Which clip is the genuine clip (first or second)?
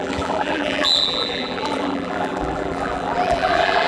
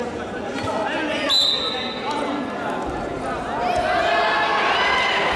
second